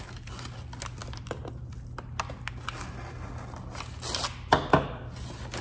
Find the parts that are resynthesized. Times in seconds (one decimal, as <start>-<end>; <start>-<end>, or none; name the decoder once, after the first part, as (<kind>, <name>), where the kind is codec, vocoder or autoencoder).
none